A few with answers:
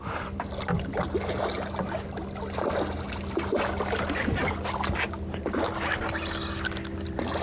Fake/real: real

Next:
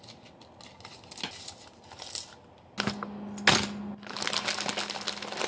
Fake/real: real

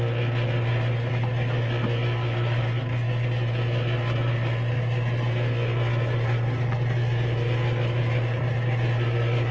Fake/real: real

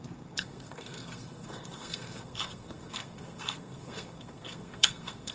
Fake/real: fake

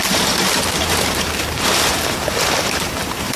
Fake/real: fake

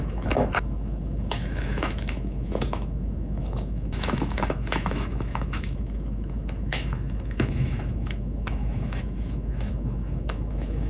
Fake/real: fake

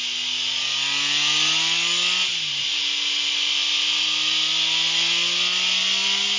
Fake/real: real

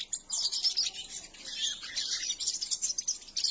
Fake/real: real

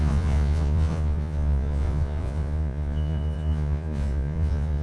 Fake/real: fake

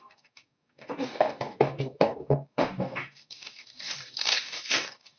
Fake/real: fake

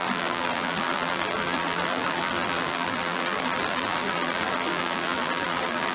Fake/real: fake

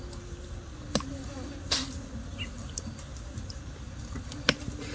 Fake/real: real